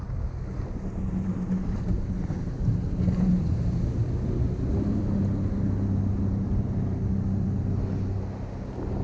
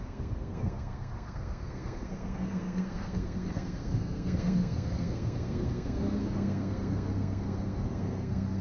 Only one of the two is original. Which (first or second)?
first